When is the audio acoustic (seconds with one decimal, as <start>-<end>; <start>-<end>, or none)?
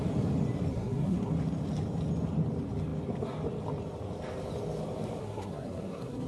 0.0-0.7; 1.3-5.2